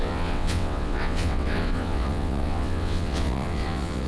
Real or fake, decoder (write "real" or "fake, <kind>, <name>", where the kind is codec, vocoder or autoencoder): fake, vocoder, WaveNeXt